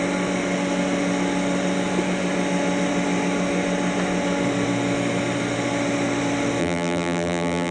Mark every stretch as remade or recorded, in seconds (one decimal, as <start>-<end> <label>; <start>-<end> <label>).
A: 0.0-6.6 recorded; 6.6-7.7 remade